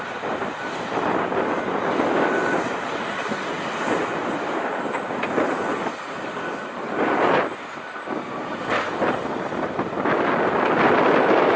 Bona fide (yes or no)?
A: yes